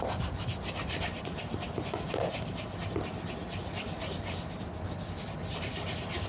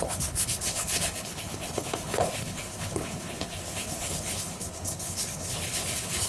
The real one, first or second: first